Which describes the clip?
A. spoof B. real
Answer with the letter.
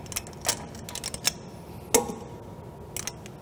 B